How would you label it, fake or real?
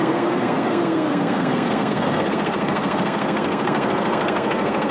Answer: fake